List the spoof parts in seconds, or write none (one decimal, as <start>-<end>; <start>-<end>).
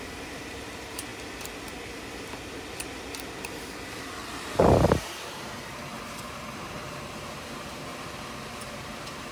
0.0-1.1; 4.9-7.9; 8.6-9.3